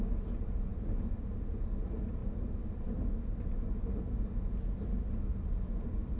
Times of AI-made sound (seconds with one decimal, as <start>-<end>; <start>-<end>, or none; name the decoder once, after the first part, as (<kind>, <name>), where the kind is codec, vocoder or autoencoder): none